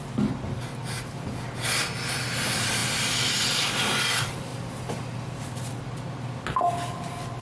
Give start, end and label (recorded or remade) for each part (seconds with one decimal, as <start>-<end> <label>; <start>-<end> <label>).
0.0-7.4 recorded